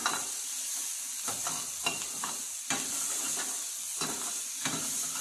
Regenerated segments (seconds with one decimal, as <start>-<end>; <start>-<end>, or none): 3.9-5.2